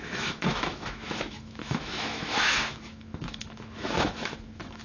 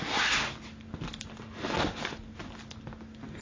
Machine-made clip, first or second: first